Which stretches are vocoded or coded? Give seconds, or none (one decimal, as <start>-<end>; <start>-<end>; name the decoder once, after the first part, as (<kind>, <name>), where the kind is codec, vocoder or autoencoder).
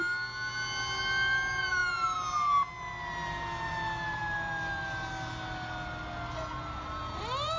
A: none